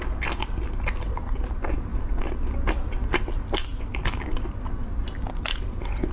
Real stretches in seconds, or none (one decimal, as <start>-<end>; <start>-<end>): 0.0-6.1